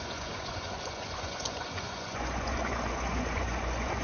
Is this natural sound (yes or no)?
no